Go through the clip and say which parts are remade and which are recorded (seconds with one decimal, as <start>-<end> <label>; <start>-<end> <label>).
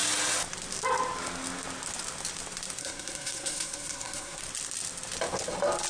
0.0-2.8 recorded; 2.8-4.4 remade; 4.4-5.9 recorded